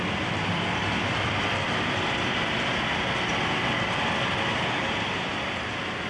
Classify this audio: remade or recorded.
remade